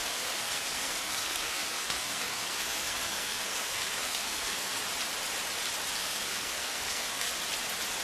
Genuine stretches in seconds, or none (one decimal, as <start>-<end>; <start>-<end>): 4.8-6.0; 7.3-8.0